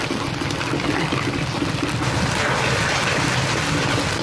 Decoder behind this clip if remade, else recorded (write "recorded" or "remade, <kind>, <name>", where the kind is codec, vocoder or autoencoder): recorded